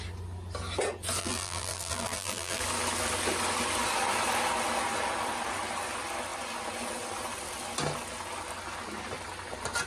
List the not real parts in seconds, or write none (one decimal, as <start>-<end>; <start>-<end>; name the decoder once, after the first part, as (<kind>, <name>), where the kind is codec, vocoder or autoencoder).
1.2-2.6 (vocoder, BigVGAN v2)